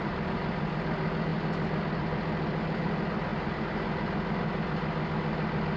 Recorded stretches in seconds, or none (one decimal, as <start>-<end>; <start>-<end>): 1.3-2.0; 3.3-5.8